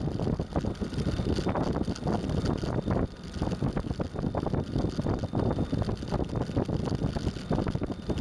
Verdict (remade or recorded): recorded